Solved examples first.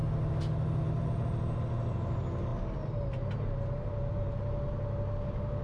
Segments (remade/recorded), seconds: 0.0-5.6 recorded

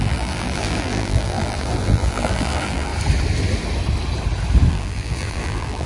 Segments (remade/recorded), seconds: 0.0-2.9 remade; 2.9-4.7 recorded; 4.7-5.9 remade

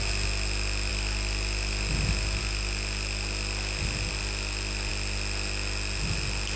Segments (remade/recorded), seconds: 0.0-6.6 recorded